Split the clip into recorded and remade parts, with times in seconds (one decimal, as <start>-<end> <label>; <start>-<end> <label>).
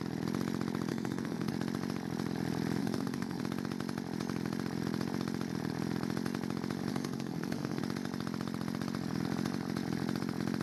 0.0-0.9 recorded; 0.9-1.5 remade; 1.5-2.8 recorded; 2.8-3.4 remade; 3.4-6.9 recorded; 6.9-7.8 remade; 7.8-10.6 recorded